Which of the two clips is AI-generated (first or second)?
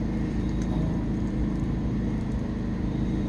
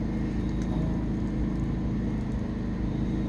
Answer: first